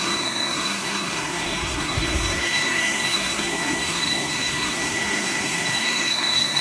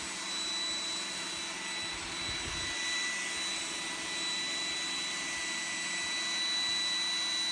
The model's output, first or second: first